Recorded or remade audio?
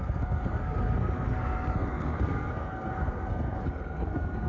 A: remade